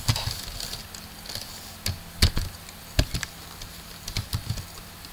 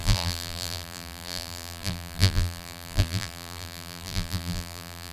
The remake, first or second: second